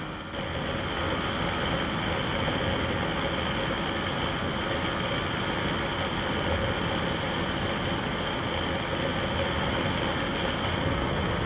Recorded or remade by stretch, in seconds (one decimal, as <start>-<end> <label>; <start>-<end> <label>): 0.0-11.5 recorded